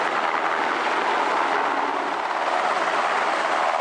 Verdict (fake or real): real